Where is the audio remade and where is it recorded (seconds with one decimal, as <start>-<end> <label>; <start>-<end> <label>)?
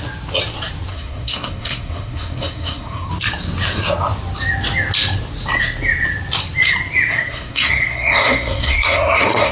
0.0-0.9 recorded; 0.9-3.1 remade; 3.1-7.1 recorded; 7.1-9.5 remade